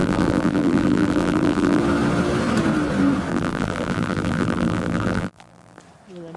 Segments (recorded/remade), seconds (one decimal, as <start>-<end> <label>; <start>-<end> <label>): 0.0-1.8 remade; 1.8-3.3 recorded; 3.3-5.8 remade; 5.8-6.4 recorded